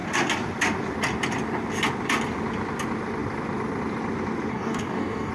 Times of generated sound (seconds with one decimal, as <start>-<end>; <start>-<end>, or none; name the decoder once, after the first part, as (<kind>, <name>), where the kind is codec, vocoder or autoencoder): 4.5-5.3 (codec, DAC)